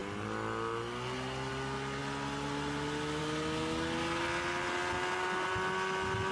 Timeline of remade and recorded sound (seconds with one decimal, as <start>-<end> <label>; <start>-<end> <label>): 0.0-6.3 recorded